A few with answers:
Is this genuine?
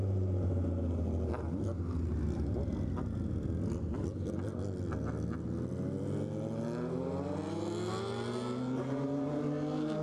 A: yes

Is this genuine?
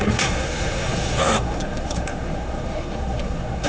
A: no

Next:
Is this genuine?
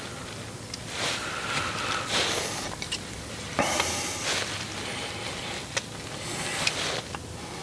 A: yes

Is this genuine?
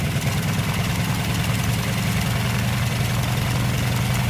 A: yes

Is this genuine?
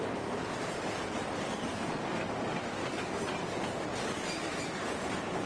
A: yes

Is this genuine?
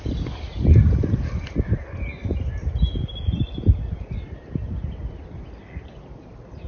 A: yes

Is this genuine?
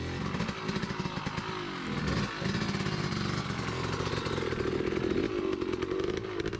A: yes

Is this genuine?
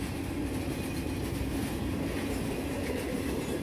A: yes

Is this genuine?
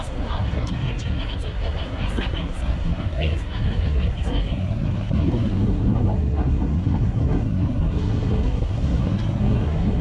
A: no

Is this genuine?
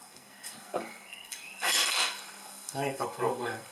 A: no